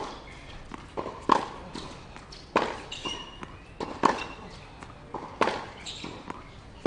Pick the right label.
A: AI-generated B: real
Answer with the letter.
A